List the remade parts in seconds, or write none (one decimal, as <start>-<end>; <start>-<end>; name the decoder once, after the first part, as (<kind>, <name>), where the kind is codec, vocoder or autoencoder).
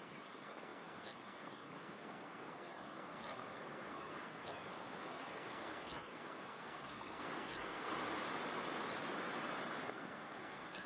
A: 0.0-7.9 (codec, SNAC); 9.9-10.9